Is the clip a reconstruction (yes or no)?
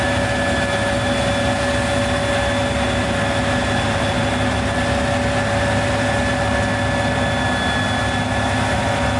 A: no